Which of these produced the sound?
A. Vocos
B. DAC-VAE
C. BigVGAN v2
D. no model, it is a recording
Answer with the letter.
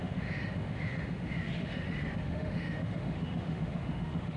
B